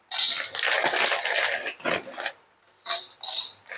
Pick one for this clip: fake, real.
real